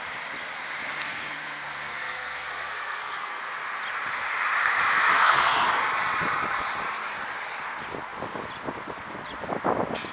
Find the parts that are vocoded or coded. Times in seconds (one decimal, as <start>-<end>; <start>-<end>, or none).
1.0-3.4; 5.1-5.6